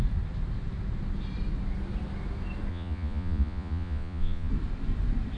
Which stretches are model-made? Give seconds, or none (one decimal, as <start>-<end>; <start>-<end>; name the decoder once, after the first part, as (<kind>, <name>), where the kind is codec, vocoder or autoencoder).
2.7-4.5 (vocoder, Vocos)